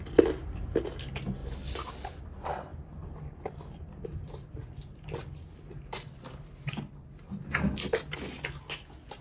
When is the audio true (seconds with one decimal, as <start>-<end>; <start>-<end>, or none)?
0.0-2.7; 7.4-9.2